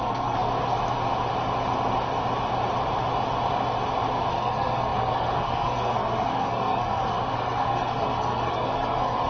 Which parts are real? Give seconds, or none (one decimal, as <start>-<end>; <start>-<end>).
0.5-4.3